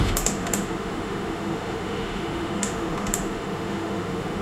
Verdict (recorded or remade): remade